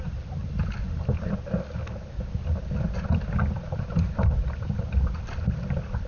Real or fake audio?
real